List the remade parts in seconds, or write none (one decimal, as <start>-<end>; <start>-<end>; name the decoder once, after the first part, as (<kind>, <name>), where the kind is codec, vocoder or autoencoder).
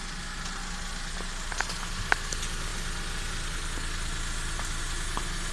none